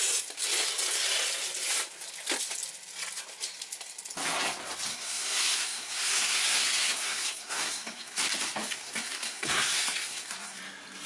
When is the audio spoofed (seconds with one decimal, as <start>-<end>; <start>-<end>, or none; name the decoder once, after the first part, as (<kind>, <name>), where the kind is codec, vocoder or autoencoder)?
4.9-8.2 (codec, SNAC); 8.6-10.6

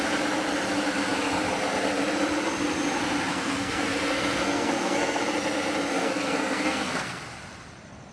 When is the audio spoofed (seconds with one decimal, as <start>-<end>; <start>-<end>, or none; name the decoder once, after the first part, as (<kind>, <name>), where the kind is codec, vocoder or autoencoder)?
3.3-5.2 (codec, SNAC); 5.9-7.2

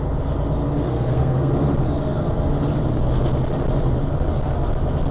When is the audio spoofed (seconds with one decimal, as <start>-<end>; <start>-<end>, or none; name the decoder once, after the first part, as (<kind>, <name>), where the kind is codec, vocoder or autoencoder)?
0.9-1.5 (codec, SNAC)